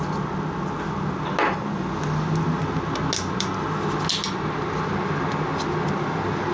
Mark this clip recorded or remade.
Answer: recorded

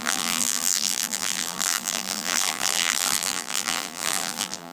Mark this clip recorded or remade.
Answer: remade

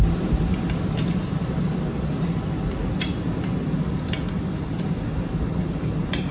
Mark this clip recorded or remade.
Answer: recorded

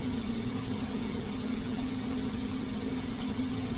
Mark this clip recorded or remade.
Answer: remade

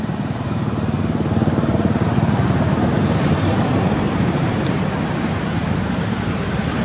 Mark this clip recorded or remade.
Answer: remade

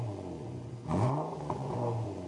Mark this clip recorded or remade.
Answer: remade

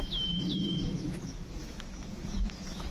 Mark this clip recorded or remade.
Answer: remade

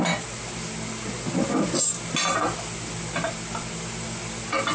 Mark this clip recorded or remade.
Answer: recorded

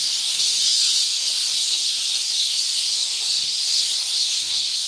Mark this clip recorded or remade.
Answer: remade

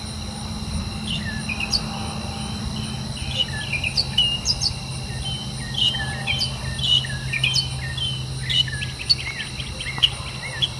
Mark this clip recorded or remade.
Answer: recorded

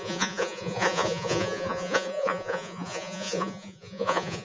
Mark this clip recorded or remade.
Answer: remade